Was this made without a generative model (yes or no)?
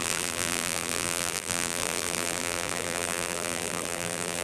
no